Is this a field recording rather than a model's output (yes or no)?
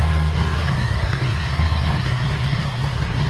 no